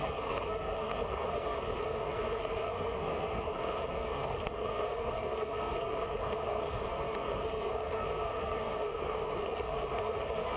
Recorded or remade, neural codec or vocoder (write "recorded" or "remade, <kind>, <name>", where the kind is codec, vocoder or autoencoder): remade, codec, SNAC